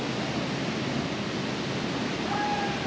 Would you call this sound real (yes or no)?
yes